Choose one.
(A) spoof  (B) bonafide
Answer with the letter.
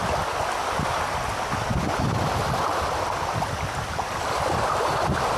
B